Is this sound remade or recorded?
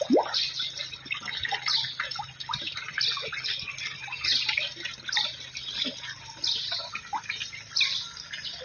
recorded